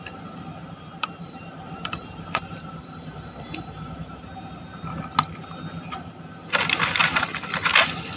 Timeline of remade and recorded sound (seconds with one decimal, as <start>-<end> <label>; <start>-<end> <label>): 0.0-0.6 recorded; 0.6-4.5 remade; 4.5-8.2 recorded